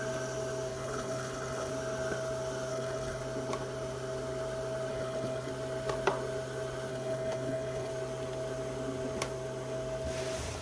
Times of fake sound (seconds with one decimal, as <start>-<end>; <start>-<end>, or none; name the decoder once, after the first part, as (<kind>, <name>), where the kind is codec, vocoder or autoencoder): 0.7-1.7 (codec, HILCodec); 2.7-3.2; 4.9-5.5; 6.9-7.9